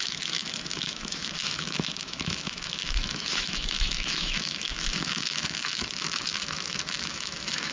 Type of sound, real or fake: fake